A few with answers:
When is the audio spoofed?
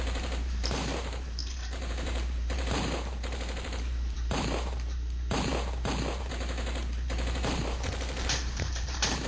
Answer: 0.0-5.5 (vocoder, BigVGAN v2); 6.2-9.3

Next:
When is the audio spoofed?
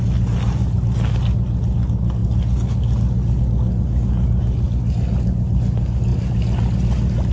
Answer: none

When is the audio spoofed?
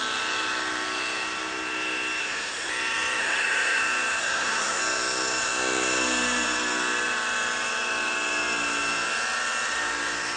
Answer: 2.2-2.7 (codec, SNAC); 3.2-3.8; 4.2-4.8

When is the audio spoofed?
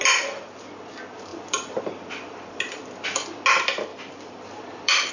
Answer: 1.3-2.8 (vocoder, BigVGAN v2); 3.9-5.1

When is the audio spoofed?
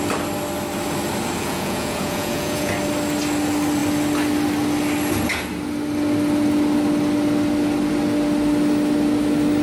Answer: 1.4-2.7 (vocoder, Vocos)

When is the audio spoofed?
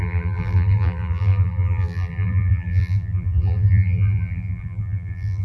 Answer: 0.0-5.4 (vocoder, BigVGAN v2)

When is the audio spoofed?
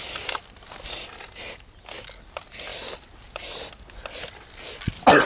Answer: none